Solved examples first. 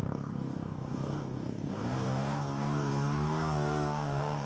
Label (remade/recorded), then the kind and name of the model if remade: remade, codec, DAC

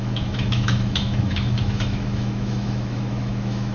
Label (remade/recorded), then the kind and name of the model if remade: remade, autoencoder, DAC-VAE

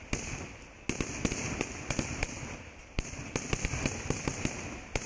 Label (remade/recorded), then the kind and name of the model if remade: recorded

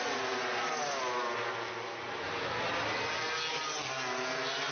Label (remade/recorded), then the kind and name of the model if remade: recorded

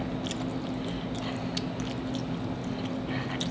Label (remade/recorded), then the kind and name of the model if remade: recorded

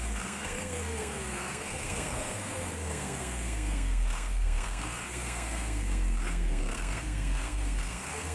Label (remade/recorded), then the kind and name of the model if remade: remade, codec, SNAC